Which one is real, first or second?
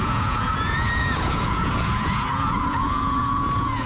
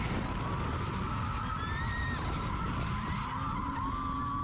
second